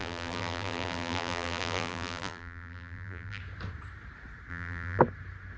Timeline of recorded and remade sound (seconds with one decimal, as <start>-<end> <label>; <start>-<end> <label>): 0.0-3.4 remade; 3.4-4.5 recorded; 4.5-5.0 remade; 5.0-5.6 recorded